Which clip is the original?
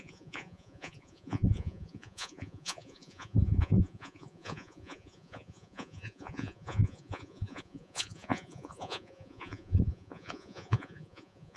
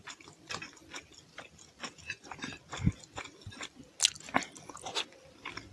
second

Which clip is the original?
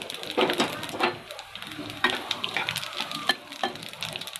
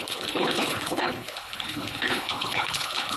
first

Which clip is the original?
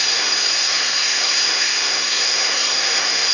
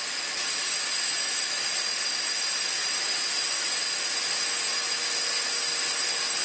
second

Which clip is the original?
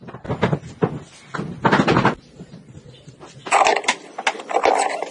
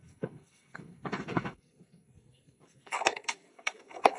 first